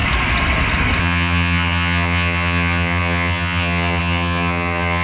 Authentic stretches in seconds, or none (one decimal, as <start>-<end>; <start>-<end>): 0.0-1.0